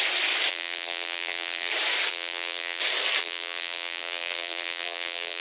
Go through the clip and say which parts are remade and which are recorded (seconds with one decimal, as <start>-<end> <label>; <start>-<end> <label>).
0.0-0.5 recorded; 0.5-1.7 remade; 1.7-2.1 recorded; 2.1-2.8 remade; 2.8-3.2 recorded; 3.2-5.4 remade

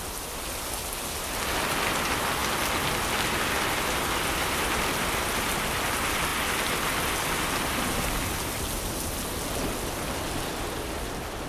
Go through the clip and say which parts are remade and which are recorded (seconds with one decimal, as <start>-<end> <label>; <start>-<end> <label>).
0.0-11.5 recorded

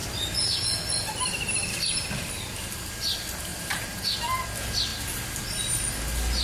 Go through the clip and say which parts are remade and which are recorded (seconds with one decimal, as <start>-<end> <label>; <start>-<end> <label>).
0.0-3.5 recorded; 3.5-4.0 remade; 4.0-6.4 recorded